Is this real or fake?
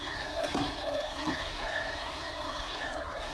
fake